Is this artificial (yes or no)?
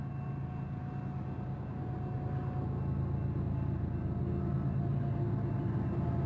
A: no